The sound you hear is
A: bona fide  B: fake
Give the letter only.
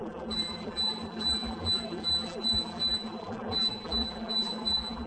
B